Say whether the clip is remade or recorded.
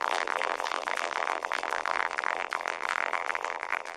remade